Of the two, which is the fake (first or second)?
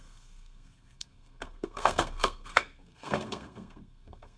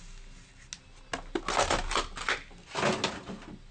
first